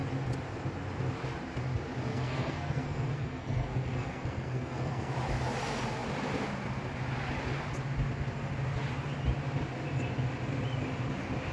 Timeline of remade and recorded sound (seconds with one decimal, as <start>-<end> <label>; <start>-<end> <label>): 0.0-2.1 recorded; 2.1-5.1 remade; 5.1-11.5 recorded

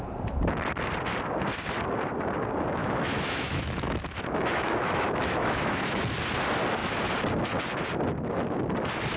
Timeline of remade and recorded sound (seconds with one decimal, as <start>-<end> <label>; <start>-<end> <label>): 0.0-2.8 recorded; 2.8-6.0 remade; 6.0-9.2 recorded